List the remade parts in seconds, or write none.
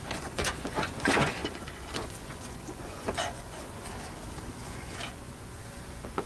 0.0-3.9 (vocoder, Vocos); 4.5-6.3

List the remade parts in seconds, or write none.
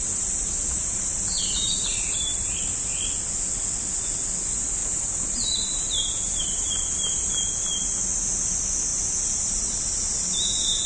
0.0-2.5 (vocoder, BigVGAN v2); 4.8-7.2; 8.9-10.9